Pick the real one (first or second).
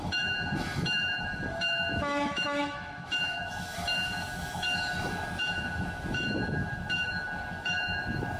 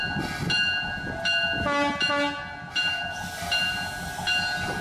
second